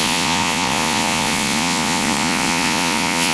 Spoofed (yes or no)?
yes